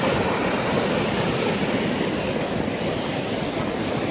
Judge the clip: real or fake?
real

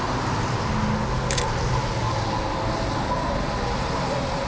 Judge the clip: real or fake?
real